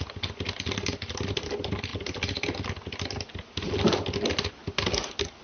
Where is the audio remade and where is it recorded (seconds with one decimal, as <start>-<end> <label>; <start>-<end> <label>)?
0.0-5.4 recorded